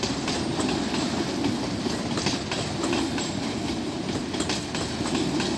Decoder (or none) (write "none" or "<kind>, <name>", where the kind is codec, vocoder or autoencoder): none